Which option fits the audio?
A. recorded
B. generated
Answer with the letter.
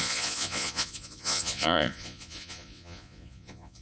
B